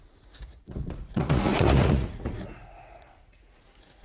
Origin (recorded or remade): remade